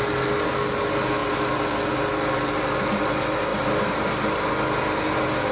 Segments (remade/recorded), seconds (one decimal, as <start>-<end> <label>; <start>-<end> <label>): 0.0-5.5 recorded